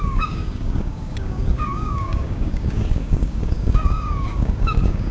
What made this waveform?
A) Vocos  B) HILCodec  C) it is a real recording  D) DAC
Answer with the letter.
D